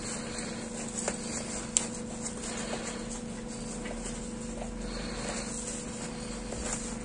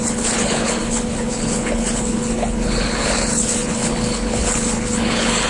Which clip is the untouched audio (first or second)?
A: first